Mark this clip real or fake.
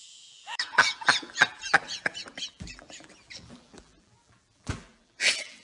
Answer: fake